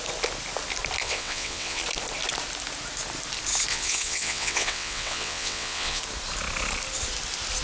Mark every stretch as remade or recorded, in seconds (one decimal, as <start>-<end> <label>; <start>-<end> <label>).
0.0-1.0 recorded; 1.0-1.8 remade; 1.8-3.7 recorded; 3.7-6.0 remade; 6.0-7.6 recorded